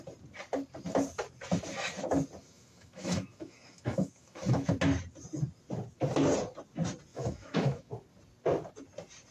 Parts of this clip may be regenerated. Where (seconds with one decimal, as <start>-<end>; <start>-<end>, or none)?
2.4-4.7; 7.1-7.9

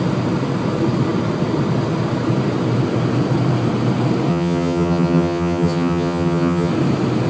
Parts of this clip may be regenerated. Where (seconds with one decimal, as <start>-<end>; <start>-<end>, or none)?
4.3-6.7

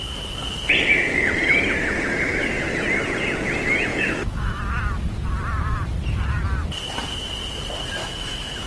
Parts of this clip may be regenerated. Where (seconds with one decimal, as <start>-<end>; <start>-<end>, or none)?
3.9-4.6; 8.0-8.7

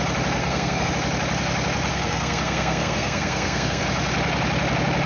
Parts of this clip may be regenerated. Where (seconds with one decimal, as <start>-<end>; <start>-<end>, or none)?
0.4-0.9; 1.9-3.8

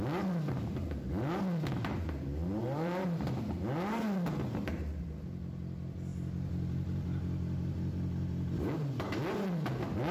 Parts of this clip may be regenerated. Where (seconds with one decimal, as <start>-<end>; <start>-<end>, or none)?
2.6-3.4

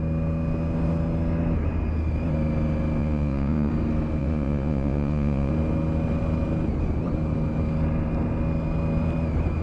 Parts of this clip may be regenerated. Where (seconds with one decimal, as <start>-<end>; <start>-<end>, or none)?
3.0-3.7; 4.2-5.5

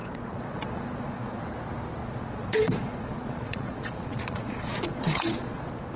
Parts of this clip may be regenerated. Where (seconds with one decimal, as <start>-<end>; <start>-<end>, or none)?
0.0-1.4; 2.0-5.6